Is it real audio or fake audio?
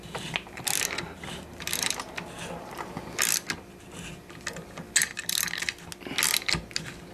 real